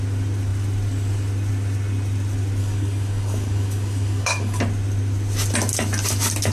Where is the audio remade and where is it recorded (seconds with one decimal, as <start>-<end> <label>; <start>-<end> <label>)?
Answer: 0.0-2.6 recorded; 2.6-4.6 remade; 4.6-6.5 recorded

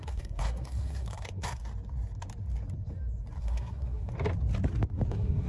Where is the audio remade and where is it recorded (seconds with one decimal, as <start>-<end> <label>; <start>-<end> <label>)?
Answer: 0.0-1.6 remade; 1.6-3.4 recorded; 3.4-4.1 remade; 4.1-5.1 recorded; 5.1-5.5 remade

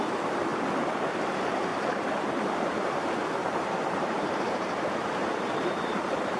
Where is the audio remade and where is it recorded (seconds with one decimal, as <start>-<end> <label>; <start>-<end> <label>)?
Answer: 0.0-1.7 recorded; 1.7-2.3 remade; 2.3-3.4 recorded; 3.4-6.4 remade